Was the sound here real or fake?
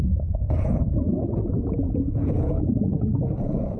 fake